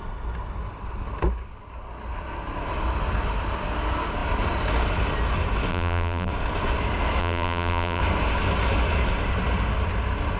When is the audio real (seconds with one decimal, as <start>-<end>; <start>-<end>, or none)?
0.0-5.7; 6.3-7.2; 8.0-10.4